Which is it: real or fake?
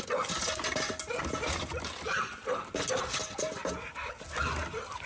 real